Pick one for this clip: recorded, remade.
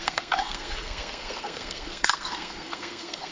remade